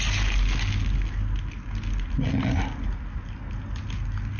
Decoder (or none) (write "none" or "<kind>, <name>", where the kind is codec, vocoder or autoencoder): none